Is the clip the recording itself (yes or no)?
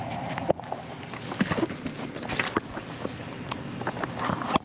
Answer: yes